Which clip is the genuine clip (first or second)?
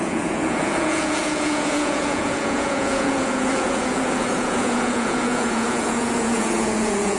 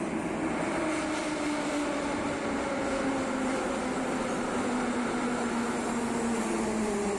second